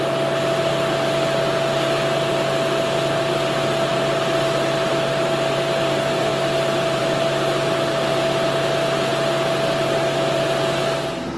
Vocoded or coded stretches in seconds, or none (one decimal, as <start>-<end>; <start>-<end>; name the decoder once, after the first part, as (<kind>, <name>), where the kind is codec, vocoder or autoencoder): none